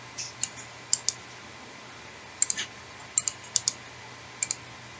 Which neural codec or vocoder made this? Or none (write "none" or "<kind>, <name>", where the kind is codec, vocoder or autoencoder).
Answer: none